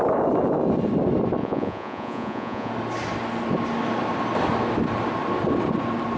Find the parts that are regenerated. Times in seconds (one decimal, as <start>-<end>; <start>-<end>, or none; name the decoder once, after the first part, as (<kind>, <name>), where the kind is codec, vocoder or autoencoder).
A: 1.4-2.7 (vocoder, Vocos)